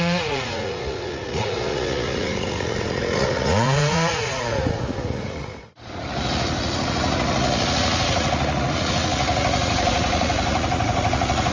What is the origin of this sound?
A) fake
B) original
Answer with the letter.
A